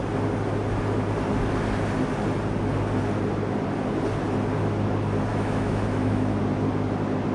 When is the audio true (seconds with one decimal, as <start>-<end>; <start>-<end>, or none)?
0.0-5.3; 6.4-7.3